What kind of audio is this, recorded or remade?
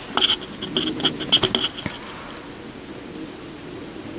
recorded